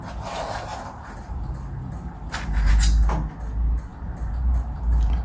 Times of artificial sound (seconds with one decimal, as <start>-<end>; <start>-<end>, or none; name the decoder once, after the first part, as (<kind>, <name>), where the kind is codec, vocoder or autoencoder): 0.7-2.7 (vocoder, BigVGAN v2); 3.9-5.2

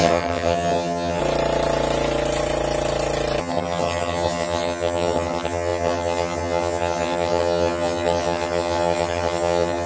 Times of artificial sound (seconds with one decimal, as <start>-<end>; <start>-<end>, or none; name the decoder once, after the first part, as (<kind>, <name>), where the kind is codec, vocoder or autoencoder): 0.0-1.2 (vocoder, HiFi-GAN); 3.4-9.9

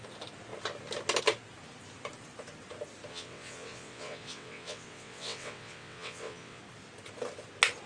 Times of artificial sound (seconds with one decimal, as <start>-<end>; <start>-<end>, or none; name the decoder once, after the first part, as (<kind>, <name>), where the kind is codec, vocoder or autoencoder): 3.1-6.6 (vocoder, WaveNeXt)

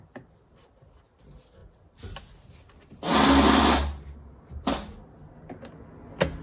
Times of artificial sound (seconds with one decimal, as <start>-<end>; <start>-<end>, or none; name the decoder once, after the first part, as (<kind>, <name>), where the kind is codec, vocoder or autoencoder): none

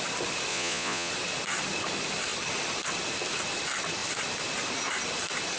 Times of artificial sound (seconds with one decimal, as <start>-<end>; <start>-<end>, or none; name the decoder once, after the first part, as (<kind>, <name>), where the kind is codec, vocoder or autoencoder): 0.5-1.1 (vocoder, Vocos)

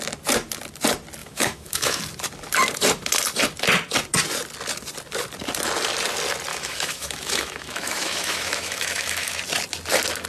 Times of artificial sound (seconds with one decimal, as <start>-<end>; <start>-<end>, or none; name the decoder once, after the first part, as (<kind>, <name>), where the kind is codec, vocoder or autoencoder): 1.2-2.0 (autoencoder, DAC-VAE); 6.5-9.4

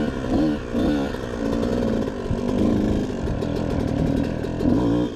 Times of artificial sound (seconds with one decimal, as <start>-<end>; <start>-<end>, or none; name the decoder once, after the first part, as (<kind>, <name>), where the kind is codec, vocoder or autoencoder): none